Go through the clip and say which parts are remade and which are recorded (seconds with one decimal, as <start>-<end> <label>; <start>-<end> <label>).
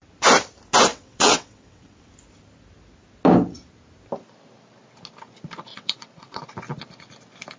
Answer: 0.0-0.9 recorded; 0.9-2.1 remade; 2.1-5.7 recorded; 5.7-6.4 remade; 6.4-7.6 recorded